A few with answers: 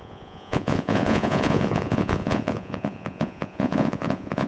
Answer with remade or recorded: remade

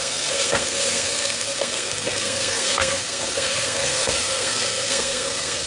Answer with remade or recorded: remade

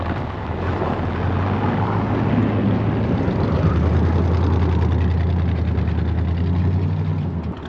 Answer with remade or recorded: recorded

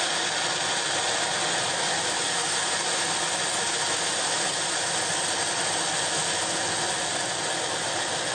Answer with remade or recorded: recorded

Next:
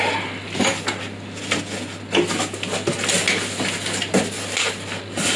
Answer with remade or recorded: recorded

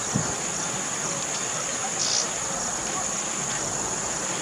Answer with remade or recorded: recorded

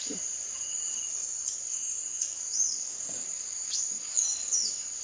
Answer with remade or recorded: remade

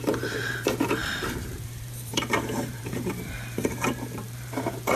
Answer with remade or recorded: remade